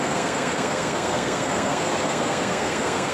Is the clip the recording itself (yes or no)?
no